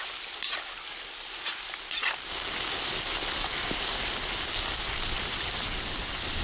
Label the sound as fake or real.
real